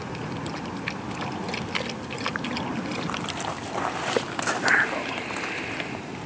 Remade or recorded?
recorded